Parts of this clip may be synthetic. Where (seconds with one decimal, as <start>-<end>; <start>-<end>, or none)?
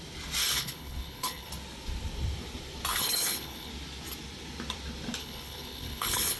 0.4-1.5; 2.9-3.7; 5.2-6.4